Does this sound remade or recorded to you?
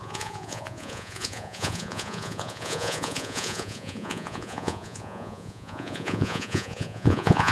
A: remade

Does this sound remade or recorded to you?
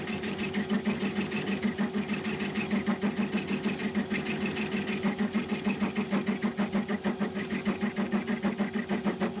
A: recorded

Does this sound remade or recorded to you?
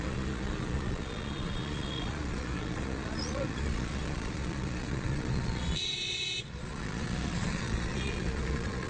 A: remade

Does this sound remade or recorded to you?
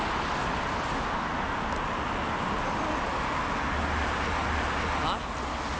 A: recorded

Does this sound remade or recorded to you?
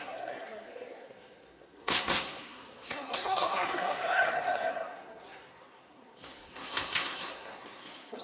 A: remade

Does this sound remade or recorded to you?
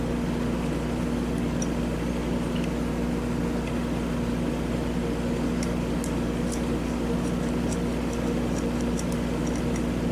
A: recorded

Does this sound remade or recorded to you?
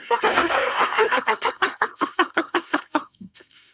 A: remade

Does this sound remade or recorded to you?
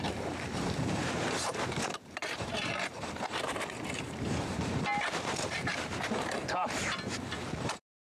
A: remade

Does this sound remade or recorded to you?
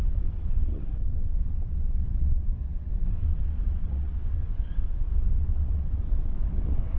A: remade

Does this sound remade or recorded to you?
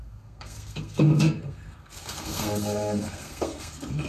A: remade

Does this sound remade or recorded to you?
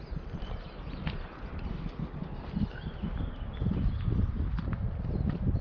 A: recorded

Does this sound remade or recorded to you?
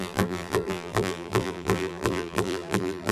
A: remade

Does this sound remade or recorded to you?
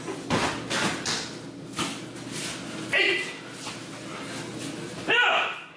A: recorded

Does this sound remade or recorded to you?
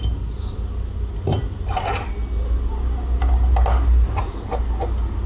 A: recorded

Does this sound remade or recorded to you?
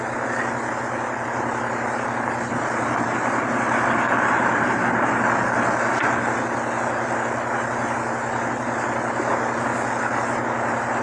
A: recorded